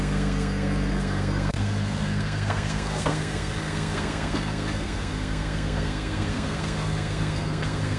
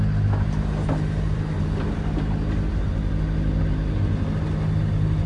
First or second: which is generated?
first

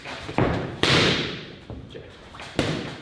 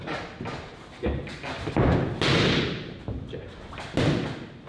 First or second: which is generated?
first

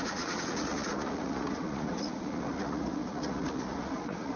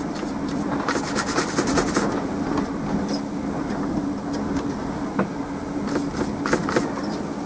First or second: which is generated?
first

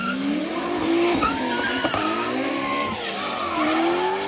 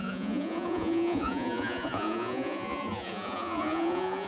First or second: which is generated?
second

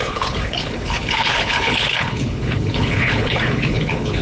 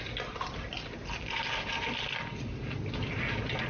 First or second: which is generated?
first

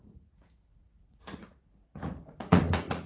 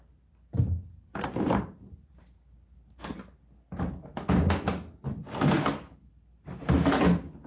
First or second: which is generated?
first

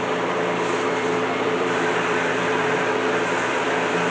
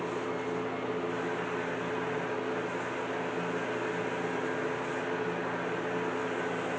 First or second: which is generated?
first